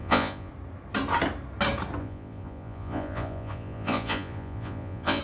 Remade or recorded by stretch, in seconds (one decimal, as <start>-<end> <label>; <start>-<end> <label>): 0.0-0.5 remade; 0.5-2.0 recorded; 2.0-5.2 remade